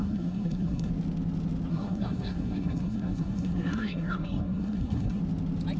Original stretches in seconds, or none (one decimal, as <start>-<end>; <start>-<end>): 0.9-1.7; 5.2-5.8

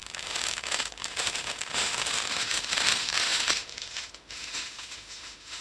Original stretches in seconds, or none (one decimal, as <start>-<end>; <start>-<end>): none

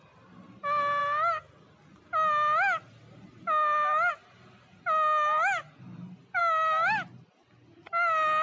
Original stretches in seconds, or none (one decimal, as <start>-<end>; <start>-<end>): 0.0-8.4

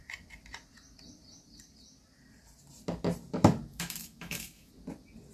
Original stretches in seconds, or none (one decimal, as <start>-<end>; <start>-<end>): 0.0-3.7; 4.7-5.3